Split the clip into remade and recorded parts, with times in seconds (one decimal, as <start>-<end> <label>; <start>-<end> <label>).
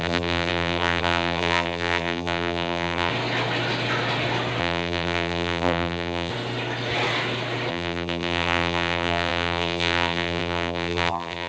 0.0-3.1 remade; 3.1-4.6 recorded; 4.6-6.3 remade; 6.3-7.7 recorded; 7.7-11.5 remade